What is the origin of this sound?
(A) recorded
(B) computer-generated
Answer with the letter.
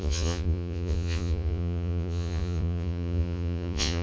B